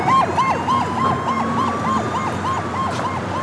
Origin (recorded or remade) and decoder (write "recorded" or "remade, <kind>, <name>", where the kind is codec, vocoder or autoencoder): recorded